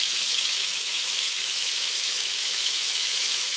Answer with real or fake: fake